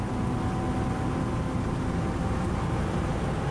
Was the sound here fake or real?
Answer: real